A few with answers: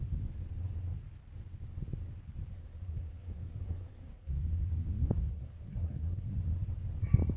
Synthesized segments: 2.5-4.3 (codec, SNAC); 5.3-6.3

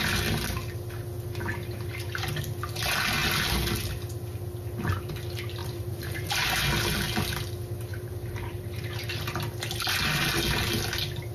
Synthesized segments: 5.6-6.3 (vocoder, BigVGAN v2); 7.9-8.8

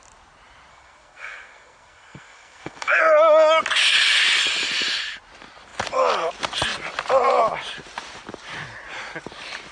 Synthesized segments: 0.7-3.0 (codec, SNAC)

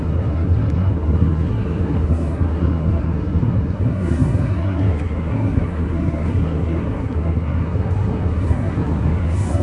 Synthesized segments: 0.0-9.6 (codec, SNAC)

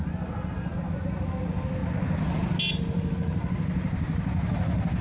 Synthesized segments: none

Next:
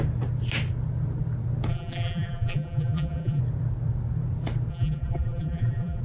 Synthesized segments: 1.7-3.4 (vocoder, BigVGAN v2); 4.7-6.0

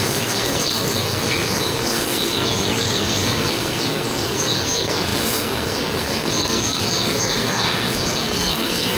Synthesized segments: 0.0-9.0 (codec, SNAC)

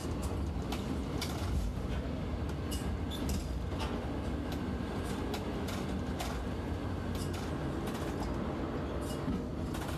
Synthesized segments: none